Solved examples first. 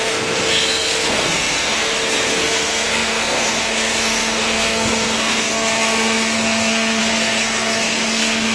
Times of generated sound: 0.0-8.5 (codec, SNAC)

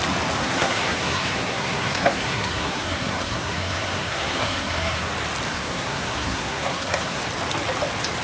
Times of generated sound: 0.4-5.1 (codec, SNAC); 5.5-7.2

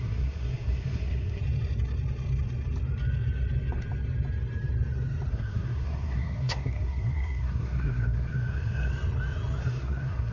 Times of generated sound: 0.0-1.4 (codec, SNAC); 5.3-8.9; 9.6-10.3